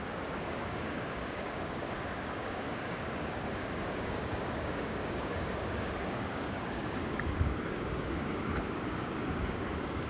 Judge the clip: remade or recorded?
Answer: remade